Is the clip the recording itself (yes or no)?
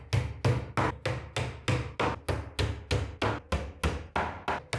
yes